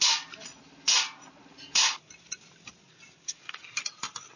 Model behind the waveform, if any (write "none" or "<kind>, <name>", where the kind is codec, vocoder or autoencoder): none